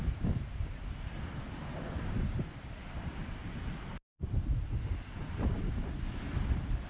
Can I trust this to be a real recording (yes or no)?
no